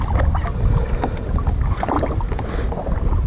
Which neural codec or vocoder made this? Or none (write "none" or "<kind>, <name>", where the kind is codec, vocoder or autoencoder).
none